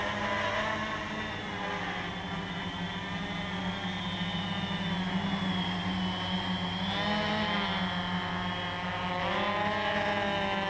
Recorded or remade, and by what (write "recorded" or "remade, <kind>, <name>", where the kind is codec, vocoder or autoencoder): recorded